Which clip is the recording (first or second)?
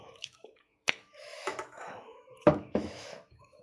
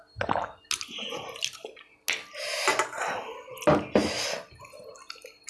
second